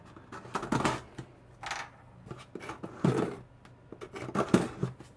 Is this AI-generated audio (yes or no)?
no